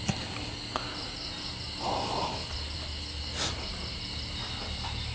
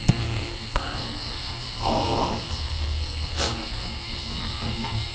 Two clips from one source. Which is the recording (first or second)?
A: first